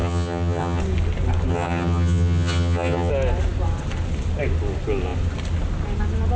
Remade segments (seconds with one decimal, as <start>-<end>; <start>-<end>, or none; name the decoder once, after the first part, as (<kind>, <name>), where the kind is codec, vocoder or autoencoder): 0.0-0.8 (vocoder, HiFi-GAN); 1.5-3.1